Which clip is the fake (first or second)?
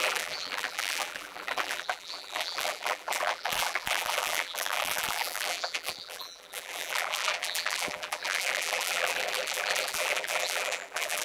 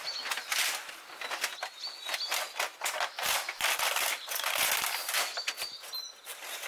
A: first